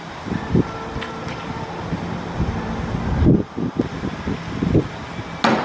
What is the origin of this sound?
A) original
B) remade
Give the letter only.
A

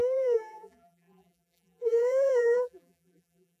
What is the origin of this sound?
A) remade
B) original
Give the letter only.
A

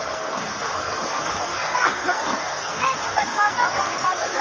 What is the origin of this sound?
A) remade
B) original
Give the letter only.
A